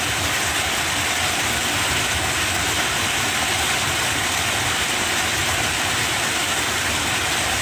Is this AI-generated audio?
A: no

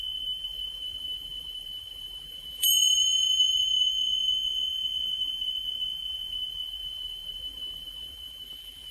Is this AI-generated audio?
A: yes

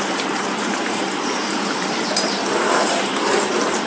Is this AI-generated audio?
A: yes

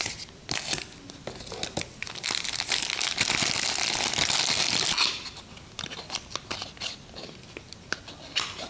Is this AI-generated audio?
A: no